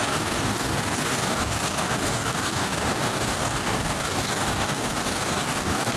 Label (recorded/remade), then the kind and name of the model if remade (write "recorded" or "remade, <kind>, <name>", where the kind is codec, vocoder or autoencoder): remade, codec, DAC